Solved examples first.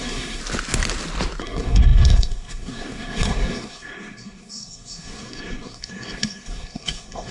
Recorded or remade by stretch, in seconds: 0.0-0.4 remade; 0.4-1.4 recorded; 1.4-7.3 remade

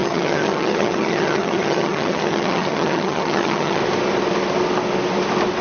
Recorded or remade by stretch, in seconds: 0.0-3.8 remade; 3.8-5.6 recorded

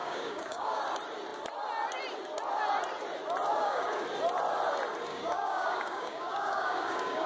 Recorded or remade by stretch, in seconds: 0.0-0.8 remade; 0.8-3.5 recorded; 3.5-4.0 remade; 4.0-5.1 recorded; 5.1-7.3 remade